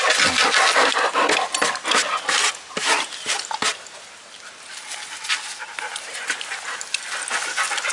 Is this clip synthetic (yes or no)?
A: no